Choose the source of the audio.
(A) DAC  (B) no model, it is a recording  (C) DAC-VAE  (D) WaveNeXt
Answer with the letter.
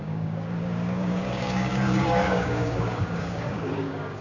A